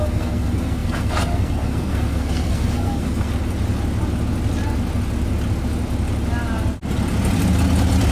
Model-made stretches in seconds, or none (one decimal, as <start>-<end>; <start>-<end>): 0.0-3.3